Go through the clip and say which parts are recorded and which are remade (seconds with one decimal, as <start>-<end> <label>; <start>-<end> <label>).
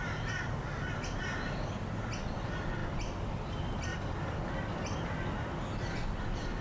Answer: 0.0-3.9 recorded; 3.9-5.0 remade; 5.0-6.6 recorded